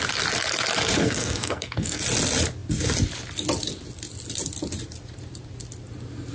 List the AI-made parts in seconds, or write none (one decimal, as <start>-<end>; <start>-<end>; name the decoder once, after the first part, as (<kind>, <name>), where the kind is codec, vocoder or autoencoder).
1.0-2.0 (codec, SNAC)